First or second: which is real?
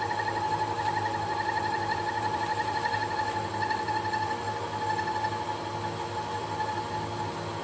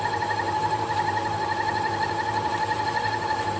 first